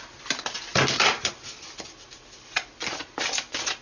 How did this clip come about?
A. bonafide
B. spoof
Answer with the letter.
A